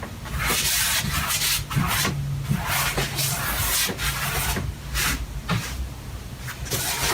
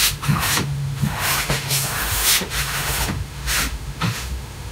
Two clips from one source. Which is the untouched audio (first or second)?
first